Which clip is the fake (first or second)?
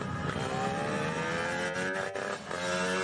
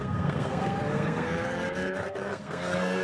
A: second